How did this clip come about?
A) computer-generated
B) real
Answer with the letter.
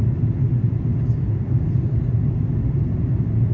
B